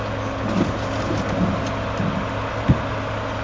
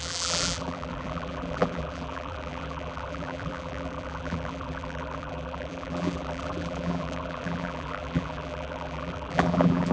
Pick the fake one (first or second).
second